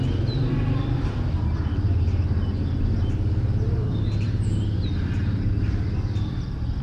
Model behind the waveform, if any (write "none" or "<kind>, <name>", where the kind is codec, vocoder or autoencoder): none